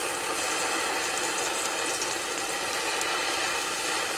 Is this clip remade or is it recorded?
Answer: recorded